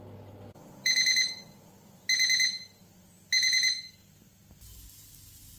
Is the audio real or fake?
real